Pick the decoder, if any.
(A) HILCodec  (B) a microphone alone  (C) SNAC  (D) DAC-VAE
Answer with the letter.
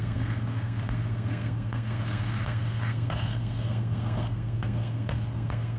C